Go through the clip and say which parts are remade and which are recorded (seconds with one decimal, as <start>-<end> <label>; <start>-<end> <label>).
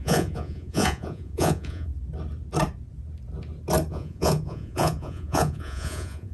0.0-1.9 remade; 1.9-3.9 recorded; 3.9-6.3 remade